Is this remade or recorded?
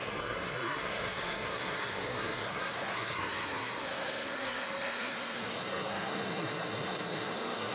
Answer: remade